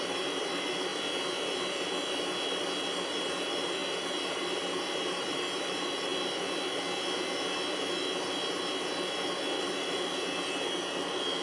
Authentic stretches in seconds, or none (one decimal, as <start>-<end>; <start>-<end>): 0.9-2.7; 6.1-7.8